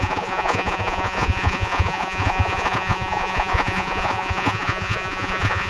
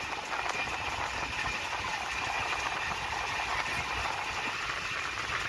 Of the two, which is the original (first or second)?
second